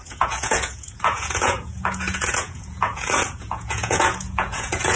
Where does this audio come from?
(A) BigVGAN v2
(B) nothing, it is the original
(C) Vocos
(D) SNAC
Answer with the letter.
C